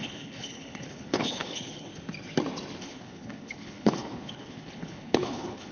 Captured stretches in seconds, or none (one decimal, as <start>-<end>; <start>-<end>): 1.9-2.8